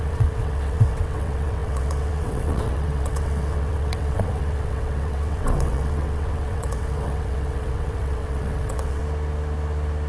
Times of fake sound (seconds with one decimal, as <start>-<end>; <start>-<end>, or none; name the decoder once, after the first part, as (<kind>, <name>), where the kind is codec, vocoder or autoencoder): 0.0-9.0 (vocoder, WaveNeXt)

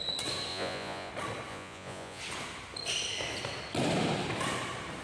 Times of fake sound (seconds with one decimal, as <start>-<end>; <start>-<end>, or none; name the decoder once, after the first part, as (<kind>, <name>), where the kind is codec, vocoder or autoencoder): 0.5-1.1 (vocoder, Vocos); 1.5-2.2

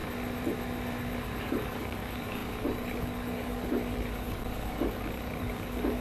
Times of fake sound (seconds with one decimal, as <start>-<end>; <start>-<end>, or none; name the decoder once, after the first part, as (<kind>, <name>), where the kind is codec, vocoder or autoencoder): 1.4-6.0 (codec, DAC)